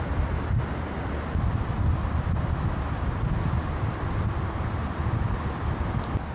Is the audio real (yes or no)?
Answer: yes